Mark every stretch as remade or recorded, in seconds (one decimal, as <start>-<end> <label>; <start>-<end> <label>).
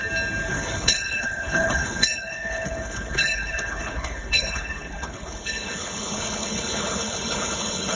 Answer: 0.0-0.5 recorded; 0.5-8.0 remade